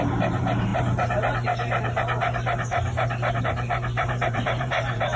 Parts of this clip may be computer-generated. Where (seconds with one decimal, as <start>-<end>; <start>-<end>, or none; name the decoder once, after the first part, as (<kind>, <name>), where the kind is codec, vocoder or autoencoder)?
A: 0.0-0.7 (vocoder, BigVGAN v2); 3.4-5.2